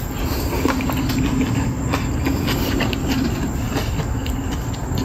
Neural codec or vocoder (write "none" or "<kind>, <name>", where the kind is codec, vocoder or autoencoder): none